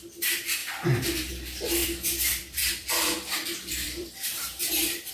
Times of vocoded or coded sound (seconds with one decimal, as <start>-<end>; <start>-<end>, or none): 1.8-5.1